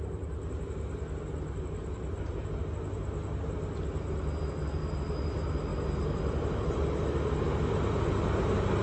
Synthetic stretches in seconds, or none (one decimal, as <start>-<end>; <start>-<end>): none